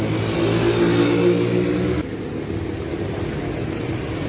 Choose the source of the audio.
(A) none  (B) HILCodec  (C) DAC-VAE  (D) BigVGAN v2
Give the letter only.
A